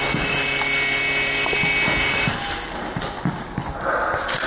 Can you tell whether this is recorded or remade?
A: recorded